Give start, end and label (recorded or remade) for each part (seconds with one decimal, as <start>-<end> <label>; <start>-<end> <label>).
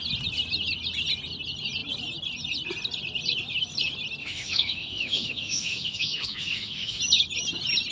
0.0-4.2 recorded; 4.2-7.0 remade; 7.0-7.9 recorded